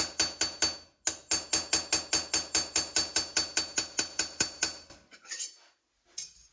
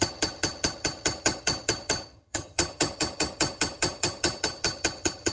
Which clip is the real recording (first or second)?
first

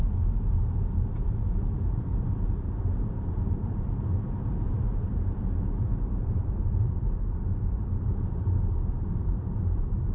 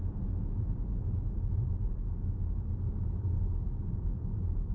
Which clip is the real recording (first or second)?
second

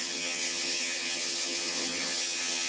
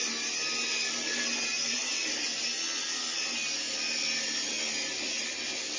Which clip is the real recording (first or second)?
second